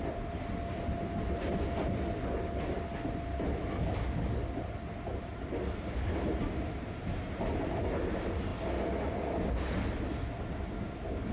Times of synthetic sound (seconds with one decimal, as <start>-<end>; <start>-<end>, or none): none